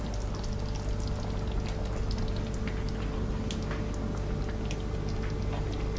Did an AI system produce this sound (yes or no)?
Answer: no